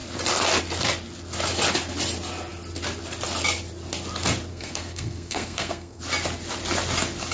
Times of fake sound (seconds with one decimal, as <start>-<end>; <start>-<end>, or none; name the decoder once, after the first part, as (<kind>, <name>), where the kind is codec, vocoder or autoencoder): 4.5-6.0 (codec, SNAC)